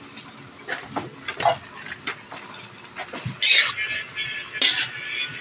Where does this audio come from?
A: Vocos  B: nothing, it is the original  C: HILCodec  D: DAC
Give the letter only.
B